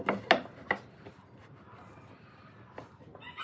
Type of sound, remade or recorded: recorded